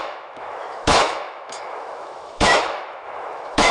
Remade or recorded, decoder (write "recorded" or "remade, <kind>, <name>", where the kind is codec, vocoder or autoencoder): remade, autoencoder, DAC-VAE